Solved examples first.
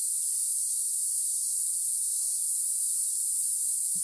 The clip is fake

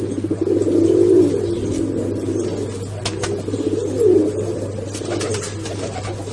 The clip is real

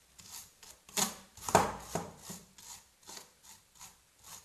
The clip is real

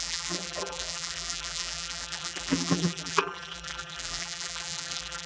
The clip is fake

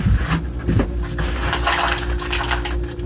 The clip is real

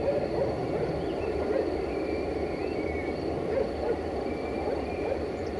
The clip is real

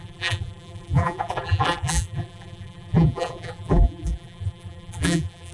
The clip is fake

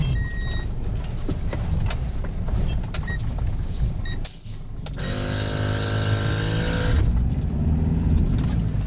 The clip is real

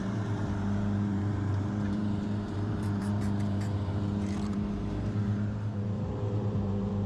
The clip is fake